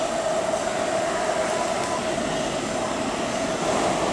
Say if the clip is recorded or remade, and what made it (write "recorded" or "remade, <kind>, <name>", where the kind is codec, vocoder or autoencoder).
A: recorded